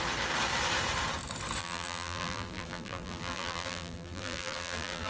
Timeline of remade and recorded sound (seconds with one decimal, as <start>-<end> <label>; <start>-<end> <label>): 0.0-1.6 recorded; 1.6-5.1 remade